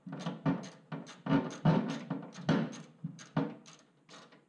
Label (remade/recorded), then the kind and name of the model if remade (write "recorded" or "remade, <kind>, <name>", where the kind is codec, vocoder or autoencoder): recorded